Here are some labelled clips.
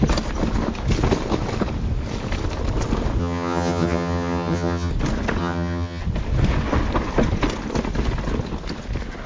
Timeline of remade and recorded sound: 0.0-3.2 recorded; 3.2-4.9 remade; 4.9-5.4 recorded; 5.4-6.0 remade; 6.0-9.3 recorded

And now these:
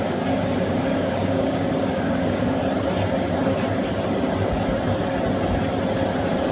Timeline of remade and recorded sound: 0.0-2.6 remade; 2.6-6.5 recorded